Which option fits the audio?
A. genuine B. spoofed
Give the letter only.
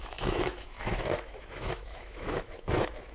B